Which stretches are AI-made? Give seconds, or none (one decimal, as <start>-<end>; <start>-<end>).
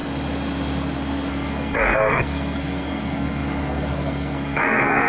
1.3-5.1